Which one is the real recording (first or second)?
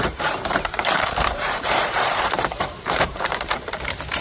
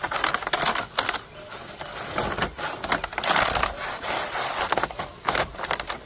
second